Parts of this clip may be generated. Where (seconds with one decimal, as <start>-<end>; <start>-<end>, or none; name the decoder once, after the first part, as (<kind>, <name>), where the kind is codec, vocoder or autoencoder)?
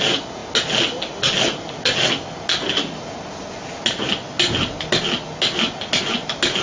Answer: none